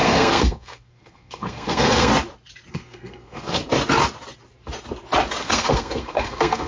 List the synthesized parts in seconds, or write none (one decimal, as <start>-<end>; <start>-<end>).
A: 0.0-2.1; 2.7-3.6; 5.4-6.7